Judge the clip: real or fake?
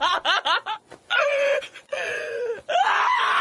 fake